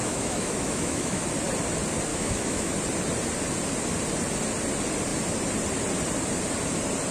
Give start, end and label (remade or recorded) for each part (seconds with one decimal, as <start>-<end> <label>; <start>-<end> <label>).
0.0-1.2 remade; 1.2-2.1 recorded; 2.1-2.7 remade; 2.7-7.1 recorded